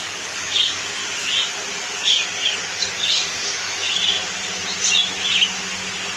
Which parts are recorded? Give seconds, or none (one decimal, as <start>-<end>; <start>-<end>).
1.0-1.8; 4.0-6.2